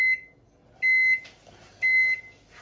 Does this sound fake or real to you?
real